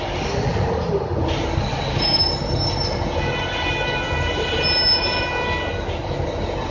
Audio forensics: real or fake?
real